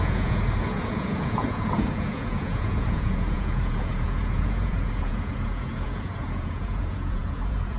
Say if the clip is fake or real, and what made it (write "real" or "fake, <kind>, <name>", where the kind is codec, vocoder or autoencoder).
fake, vocoder, Vocos